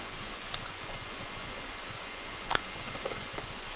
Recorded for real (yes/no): no